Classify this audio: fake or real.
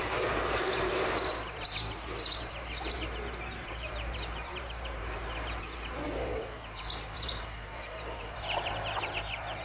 fake